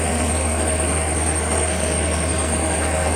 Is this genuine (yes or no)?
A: no